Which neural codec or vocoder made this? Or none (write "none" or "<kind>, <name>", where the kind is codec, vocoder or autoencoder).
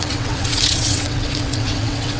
vocoder, WaveNeXt